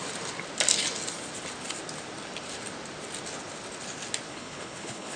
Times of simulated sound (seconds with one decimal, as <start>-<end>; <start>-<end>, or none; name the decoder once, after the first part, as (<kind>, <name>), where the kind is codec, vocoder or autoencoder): 4.3-5.2 (codec, HILCodec)